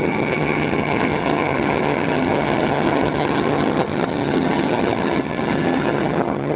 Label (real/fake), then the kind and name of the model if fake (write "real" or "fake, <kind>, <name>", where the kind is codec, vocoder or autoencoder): fake, vocoder, HiFi-GAN